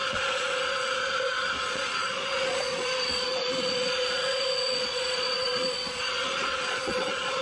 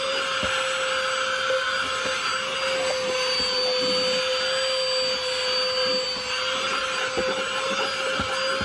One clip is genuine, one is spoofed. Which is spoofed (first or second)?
first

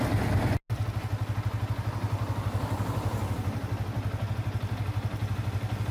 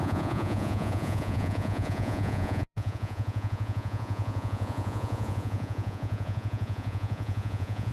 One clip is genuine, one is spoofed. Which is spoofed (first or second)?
second